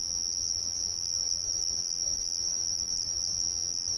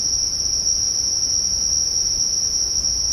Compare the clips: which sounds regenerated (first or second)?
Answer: first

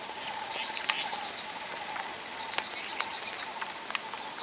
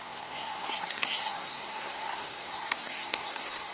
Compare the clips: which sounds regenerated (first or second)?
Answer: second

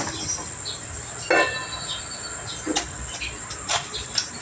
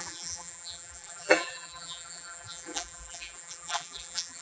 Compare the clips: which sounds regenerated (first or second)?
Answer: second